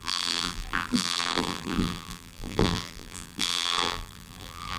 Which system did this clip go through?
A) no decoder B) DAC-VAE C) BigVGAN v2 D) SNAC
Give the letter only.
C